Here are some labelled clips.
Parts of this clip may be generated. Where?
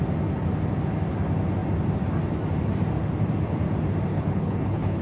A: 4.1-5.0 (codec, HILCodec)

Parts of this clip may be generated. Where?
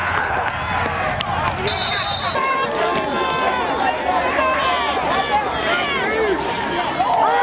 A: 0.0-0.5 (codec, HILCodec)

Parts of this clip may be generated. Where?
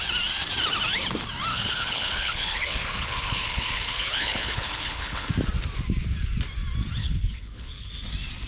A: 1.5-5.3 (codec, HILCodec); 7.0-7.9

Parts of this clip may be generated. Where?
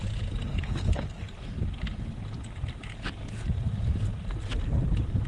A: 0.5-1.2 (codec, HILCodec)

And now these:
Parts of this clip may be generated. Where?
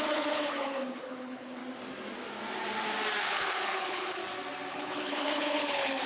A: 0.0-1.6 (codec, HILCodec); 3.2-4.2; 4.7-6.1